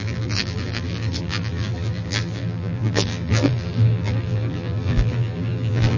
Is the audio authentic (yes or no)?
no